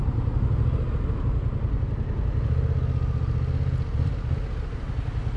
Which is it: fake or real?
real